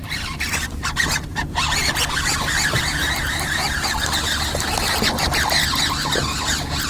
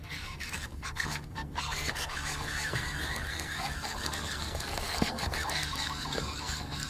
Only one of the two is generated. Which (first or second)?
second